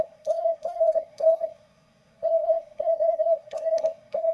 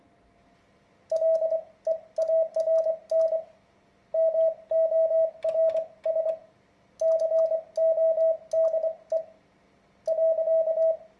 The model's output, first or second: first